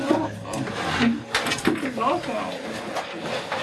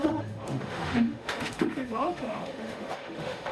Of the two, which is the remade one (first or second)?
second